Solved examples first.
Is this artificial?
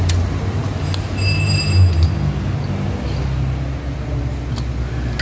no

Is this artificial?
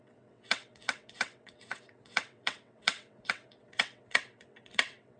yes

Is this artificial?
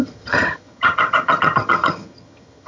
yes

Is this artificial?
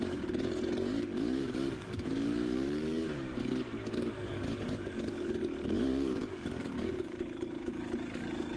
yes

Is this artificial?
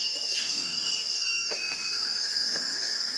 yes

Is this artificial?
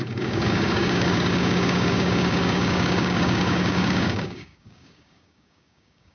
yes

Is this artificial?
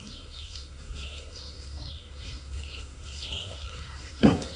yes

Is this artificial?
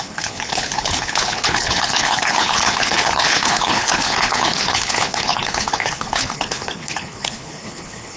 yes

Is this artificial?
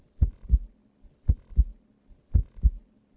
no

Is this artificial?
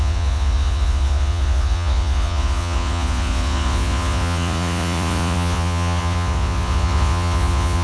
yes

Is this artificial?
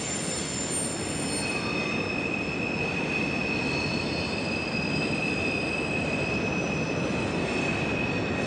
no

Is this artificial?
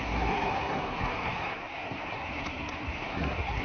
yes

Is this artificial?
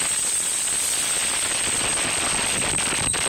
no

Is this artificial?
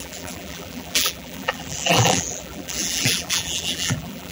yes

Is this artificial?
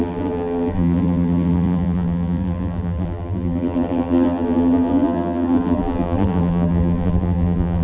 yes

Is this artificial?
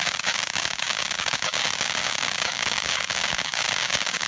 yes